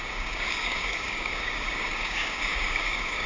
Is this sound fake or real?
fake